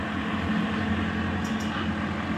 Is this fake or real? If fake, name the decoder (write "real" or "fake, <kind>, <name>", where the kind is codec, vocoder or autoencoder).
real